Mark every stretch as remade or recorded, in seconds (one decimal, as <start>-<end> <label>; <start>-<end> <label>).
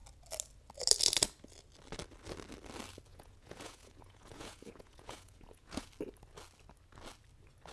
0.0-3.1 recorded; 3.1-5.9 remade; 5.9-7.7 recorded